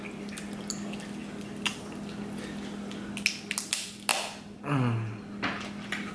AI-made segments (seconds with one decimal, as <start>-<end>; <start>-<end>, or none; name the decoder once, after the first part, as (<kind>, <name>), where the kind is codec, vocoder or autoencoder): none